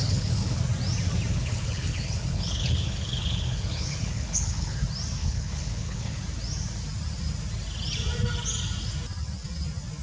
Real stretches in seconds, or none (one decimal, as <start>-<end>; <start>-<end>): 0.6-1.3; 4.8-5.2; 6.2-10.0